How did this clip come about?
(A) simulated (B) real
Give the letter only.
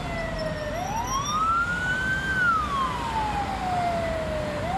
B